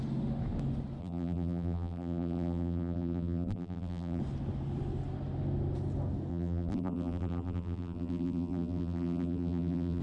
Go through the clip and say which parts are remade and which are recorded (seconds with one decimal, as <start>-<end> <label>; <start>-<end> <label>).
0.0-1.0 recorded; 1.0-4.2 remade; 4.2-6.3 recorded; 6.3-10.0 remade